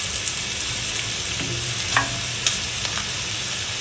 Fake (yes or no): no